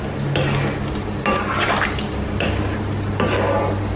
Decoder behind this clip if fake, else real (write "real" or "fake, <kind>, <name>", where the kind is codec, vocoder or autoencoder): real